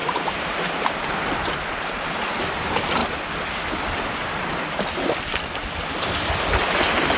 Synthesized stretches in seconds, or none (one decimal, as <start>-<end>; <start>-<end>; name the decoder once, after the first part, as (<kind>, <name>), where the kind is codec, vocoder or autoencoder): 0.0-1.6 (vocoder, BigVGAN v2)

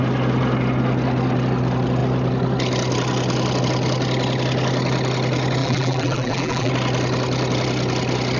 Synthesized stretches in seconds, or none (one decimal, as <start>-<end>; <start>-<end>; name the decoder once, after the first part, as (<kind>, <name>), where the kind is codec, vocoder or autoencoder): 5.6-6.7 (vocoder, BigVGAN v2)

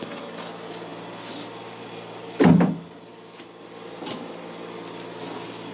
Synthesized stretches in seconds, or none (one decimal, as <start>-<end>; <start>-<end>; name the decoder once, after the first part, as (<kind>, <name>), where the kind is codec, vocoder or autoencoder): none

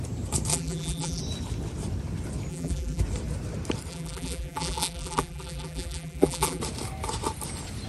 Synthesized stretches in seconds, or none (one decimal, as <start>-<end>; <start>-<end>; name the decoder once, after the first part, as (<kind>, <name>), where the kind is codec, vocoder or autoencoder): 0.5-1.2 (vocoder, BigVGAN v2); 2.5-3.0; 3.9-6.6

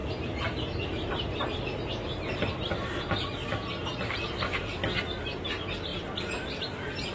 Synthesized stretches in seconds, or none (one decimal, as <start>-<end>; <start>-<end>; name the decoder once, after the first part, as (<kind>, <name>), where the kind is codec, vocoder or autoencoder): 0.0-2.7 (vocoder, BigVGAN v2); 3.4-4.7